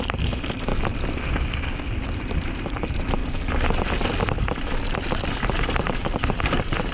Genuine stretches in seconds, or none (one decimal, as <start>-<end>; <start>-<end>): 0.7-2.2; 3.2-5.6